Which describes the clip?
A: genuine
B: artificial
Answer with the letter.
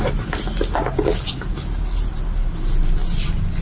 A